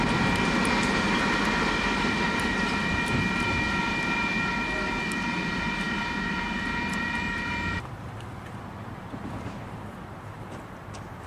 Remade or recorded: remade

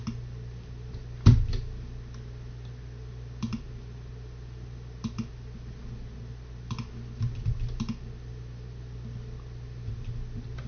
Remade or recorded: recorded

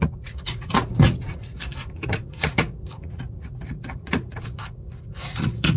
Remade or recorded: remade